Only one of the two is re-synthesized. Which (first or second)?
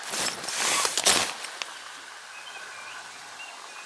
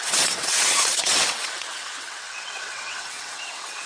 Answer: second